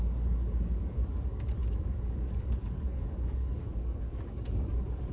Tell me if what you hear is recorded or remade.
remade